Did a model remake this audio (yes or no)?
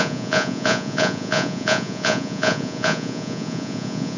yes